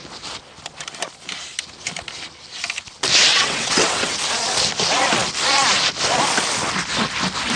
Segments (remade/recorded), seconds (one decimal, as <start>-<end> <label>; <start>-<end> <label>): 0.0-3.3 recorded; 3.3-4.2 remade; 4.2-7.6 recorded